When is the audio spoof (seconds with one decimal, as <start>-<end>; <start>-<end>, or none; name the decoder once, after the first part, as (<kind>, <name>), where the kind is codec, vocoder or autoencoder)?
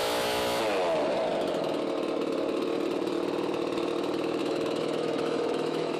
0.0-0.6 (autoencoder, DAC-VAE); 4.4-6.0